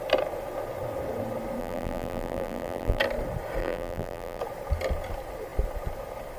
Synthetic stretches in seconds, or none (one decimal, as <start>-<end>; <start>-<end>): 1.6-3.0; 3.6-4.4